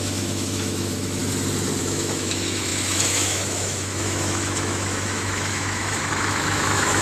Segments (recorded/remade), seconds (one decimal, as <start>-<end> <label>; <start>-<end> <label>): 0.0-1.2 remade; 1.2-1.8 recorded; 1.8-7.0 remade